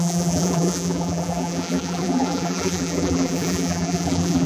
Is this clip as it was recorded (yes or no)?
no